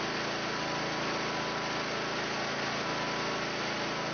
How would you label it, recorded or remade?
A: recorded